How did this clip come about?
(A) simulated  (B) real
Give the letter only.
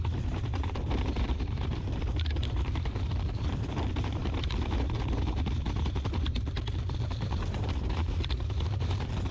A